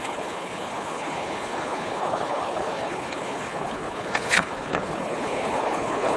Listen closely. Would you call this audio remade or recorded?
remade